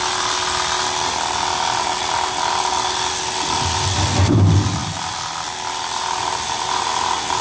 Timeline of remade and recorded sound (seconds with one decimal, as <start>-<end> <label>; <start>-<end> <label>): 0.0-7.4 recorded